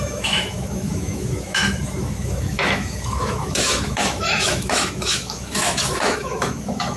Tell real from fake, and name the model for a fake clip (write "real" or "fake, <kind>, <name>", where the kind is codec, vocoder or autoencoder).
fake, autoencoder, DAC-VAE